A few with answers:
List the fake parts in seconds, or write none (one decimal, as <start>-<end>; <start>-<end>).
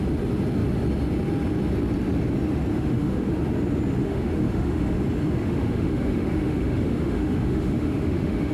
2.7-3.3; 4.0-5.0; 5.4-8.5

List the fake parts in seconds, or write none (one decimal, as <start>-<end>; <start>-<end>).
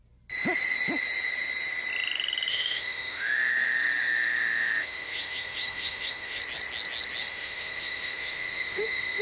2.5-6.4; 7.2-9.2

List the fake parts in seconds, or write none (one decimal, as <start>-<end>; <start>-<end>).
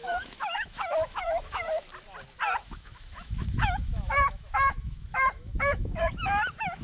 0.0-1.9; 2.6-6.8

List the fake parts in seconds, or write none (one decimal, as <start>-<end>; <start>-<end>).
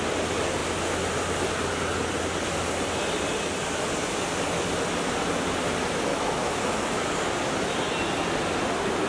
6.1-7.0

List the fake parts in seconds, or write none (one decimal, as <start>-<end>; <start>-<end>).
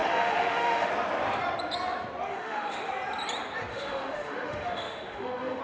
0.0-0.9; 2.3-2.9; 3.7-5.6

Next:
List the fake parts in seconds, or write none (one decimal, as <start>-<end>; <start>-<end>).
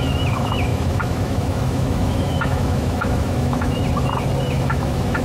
0.0-3.8; 4.5-5.2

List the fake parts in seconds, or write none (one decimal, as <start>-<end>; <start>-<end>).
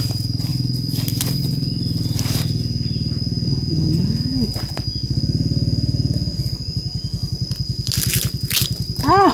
none